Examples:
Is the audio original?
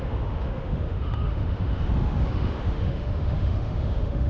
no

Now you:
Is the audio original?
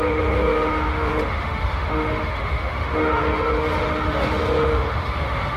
no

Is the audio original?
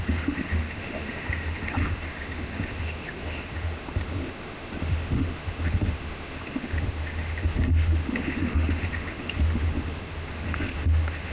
no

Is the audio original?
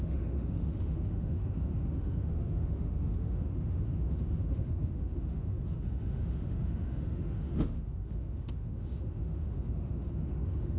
no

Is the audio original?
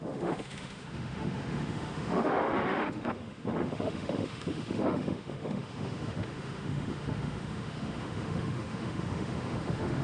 no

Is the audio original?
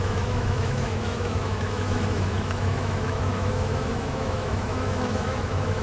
no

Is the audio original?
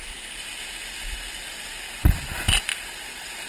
yes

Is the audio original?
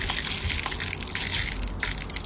yes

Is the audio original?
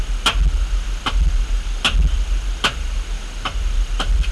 yes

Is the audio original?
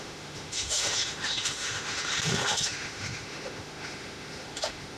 no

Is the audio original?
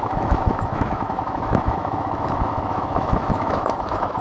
no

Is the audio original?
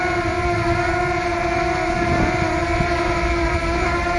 yes